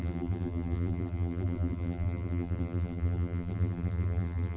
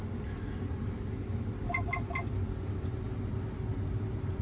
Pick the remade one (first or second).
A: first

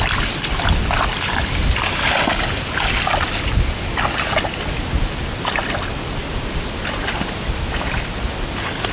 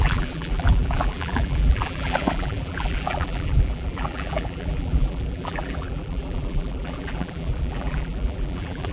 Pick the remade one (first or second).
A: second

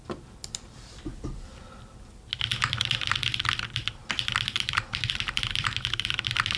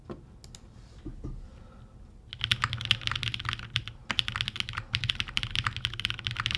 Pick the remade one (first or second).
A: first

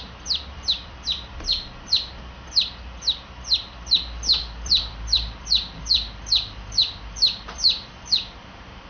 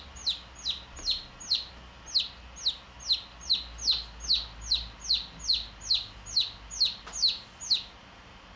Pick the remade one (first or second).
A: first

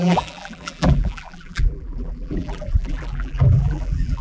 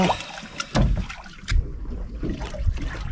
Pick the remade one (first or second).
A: first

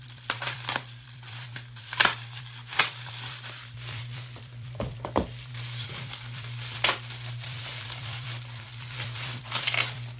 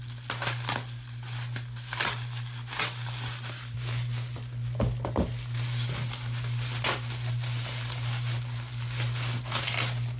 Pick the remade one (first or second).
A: first